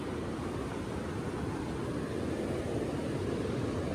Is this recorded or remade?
recorded